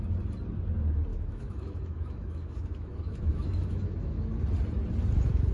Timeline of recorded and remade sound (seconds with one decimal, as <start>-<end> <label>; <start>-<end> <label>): 0.0-1.1 recorded; 1.1-4.4 remade; 4.4-5.5 recorded